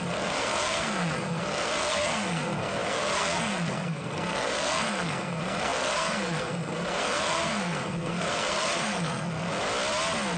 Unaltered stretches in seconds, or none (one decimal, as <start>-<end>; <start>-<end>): 9.5-10.4